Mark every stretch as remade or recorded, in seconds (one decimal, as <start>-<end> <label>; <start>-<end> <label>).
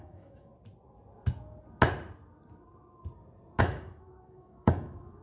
0.0-0.5 remade; 0.5-3.6 recorded; 3.6-5.2 remade